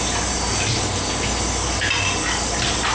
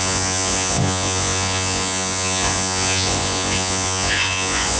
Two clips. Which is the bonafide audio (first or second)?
first